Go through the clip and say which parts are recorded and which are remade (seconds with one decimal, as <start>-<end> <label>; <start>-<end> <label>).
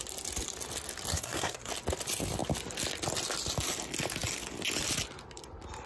0.0-1.1 recorded; 1.1-1.7 remade; 1.7-5.9 recorded